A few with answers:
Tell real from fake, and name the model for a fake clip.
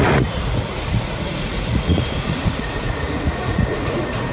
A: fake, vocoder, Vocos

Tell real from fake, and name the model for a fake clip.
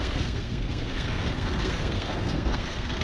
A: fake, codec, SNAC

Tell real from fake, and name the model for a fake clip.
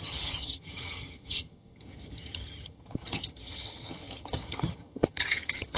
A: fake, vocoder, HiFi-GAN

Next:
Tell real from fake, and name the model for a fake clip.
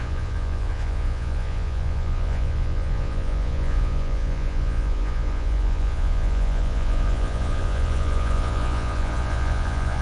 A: fake, vocoder, Vocos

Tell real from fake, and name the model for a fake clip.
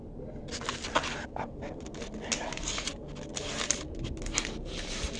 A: real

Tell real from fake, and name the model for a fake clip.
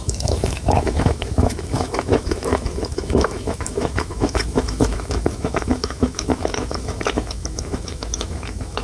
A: fake, autoencoder, DAC-VAE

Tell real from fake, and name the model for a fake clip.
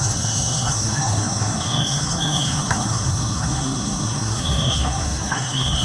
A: fake, codec, SNAC